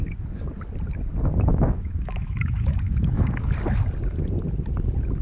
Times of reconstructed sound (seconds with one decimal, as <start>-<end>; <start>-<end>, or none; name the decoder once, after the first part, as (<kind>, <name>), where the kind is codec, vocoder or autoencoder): 1.5-3.5 (autoencoder, DAC-VAE)